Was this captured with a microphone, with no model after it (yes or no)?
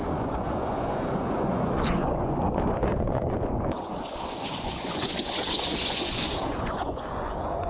no